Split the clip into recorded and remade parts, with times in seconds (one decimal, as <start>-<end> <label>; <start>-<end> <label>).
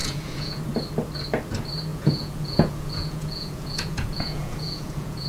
0.0-0.6 remade; 0.6-1.9 recorded; 1.9-5.3 remade